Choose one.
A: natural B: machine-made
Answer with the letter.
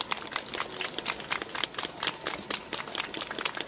A